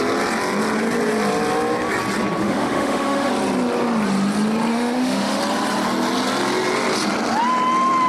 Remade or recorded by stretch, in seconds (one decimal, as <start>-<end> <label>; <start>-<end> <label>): 0.0-2.4 recorded; 2.4-3.3 remade; 3.3-4.7 recorded; 4.7-5.4 remade; 5.4-8.1 recorded